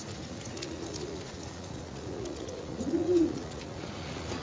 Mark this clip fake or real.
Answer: fake